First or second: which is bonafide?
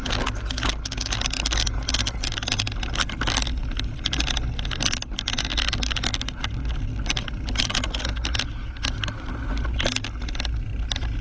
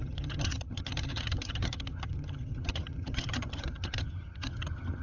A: first